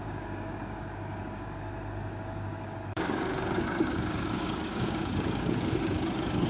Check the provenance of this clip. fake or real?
fake